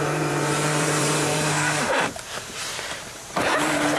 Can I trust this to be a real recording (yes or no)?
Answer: no